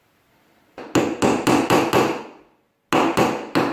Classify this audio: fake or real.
real